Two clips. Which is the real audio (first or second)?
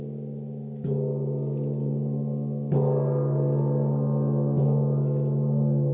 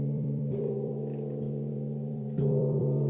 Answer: first